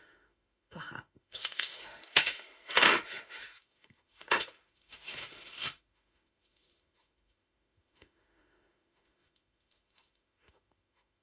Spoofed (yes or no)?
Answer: yes